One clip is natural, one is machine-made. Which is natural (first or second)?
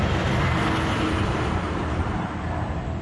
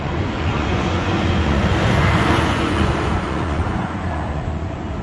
first